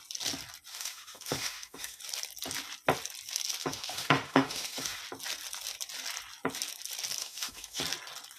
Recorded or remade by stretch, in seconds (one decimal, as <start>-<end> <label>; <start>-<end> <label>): 0.0-0.7 recorded; 0.7-2.0 remade; 2.0-3.6 recorded; 3.6-5.0 remade; 5.0-7.2 recorded; 7.2-7.8 remade; 7.8-8.4 recorded